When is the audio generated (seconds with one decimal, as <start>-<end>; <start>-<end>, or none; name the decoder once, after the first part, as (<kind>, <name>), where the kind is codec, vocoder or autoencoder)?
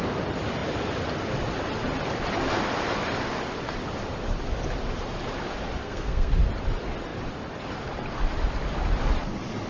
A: 5.8-6.3 (codec, SNAC)